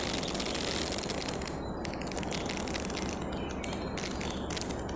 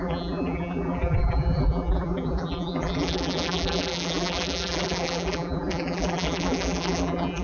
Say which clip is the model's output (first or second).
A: second